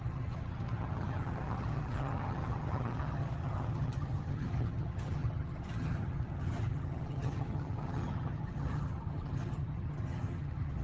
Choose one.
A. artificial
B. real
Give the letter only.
A